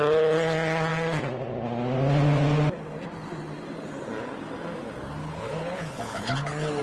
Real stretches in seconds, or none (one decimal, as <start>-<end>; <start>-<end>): 0.0-5.2